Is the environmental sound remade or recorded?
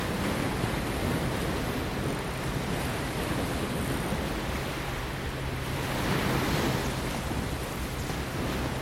recorded